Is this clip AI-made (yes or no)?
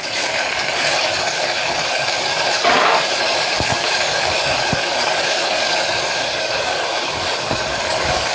yes